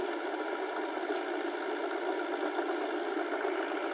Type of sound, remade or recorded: recorded